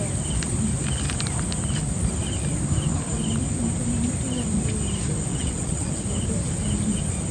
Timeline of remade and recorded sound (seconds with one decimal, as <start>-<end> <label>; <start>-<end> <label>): 0.0-5.3 recorded; 5.3-5.9 remade; 5.9-7.3 recorded